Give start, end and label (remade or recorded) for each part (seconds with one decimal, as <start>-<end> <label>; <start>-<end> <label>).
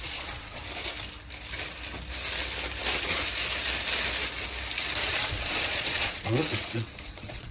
0.0-0.6 remade; 0.6-5.1 recorded; 5.1-7.5 remade